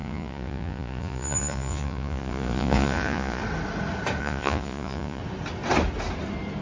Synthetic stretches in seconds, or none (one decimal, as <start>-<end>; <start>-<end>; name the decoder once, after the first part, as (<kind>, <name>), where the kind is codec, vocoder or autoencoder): 0.0-3.4 (vocoder, Vocos); 4.2-5.2